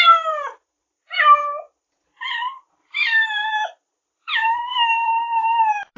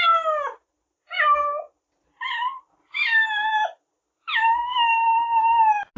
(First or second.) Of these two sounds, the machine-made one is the first